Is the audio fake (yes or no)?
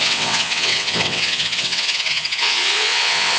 yes